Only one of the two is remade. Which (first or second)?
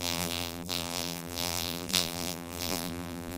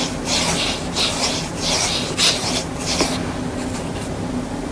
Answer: first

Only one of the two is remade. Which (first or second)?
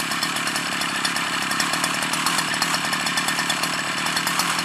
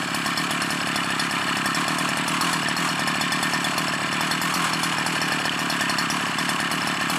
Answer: first